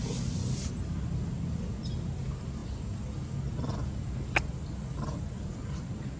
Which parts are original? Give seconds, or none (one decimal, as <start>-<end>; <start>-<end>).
0.0-6.2